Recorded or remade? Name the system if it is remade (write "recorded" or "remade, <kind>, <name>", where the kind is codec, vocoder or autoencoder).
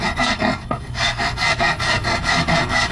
remade, codec, SNAC